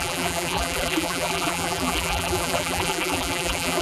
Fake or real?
fake